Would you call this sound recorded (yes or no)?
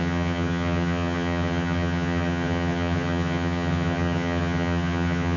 no